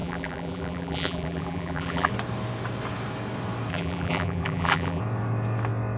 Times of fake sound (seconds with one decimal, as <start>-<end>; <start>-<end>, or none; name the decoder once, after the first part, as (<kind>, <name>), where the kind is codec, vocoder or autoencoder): 0.0-2.1 (vocoder, BigVGAN v2); 3.7-5.0